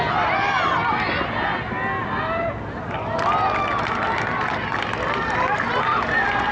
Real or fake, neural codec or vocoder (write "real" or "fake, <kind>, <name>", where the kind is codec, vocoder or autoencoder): real